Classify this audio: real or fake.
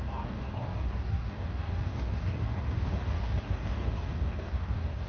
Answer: fake